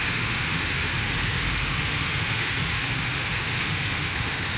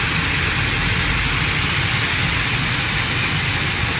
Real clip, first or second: second